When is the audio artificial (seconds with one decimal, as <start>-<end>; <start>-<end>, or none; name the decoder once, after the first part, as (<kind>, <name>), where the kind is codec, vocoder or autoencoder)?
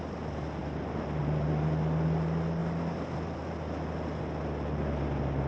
none